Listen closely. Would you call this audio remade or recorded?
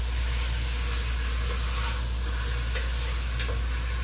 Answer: recorded